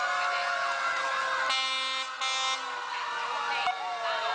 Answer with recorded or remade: recorded